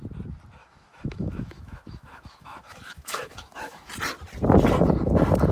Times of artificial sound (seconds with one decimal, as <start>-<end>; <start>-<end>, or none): 0.6-3.9